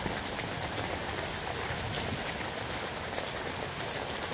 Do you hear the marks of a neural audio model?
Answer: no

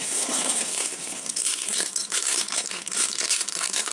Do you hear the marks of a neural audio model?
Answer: yes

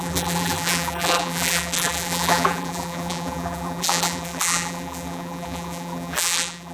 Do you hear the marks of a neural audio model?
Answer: yes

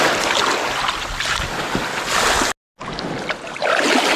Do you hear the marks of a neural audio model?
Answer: no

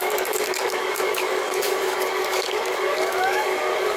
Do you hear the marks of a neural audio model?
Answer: yes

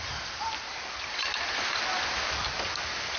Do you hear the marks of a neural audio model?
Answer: no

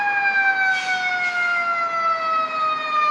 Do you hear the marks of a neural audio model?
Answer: no